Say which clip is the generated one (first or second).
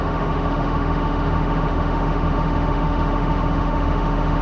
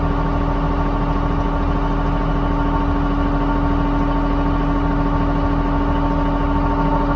first